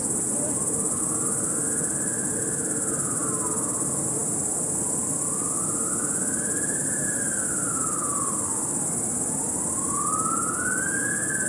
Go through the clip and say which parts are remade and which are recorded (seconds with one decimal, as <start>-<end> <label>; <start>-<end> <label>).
0.0-11.5 recorded